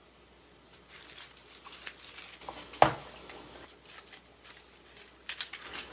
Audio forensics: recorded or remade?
recorded